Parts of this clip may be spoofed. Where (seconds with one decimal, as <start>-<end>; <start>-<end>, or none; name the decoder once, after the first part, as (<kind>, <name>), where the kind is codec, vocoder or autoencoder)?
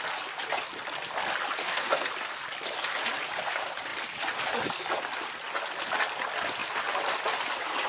1.6-2.1 (codec, SNAC)